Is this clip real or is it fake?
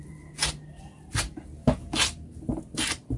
real